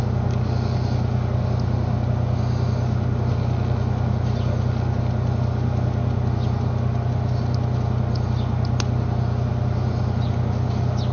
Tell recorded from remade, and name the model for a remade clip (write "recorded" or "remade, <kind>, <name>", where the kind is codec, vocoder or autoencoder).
recorded